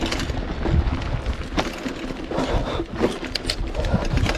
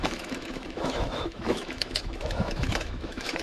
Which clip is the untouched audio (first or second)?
first